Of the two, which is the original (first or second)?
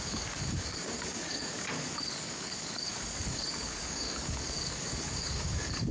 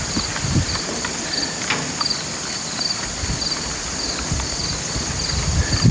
second